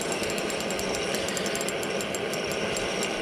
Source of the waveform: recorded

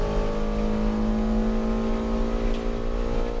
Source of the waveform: recorded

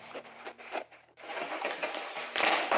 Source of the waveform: remade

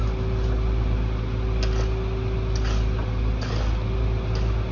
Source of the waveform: recorded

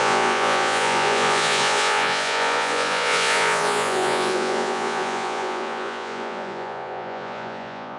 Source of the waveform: remade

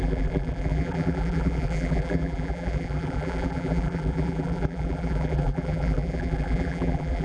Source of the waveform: remade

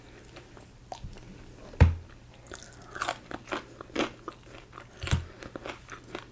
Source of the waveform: recorded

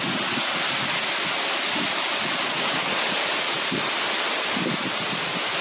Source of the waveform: recorded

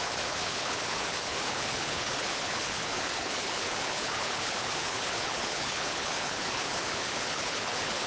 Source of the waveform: remade